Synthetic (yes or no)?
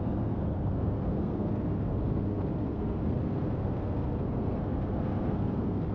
yes